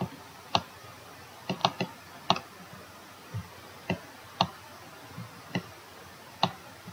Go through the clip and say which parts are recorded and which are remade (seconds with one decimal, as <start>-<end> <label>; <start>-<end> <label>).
0.0-6.9 recorded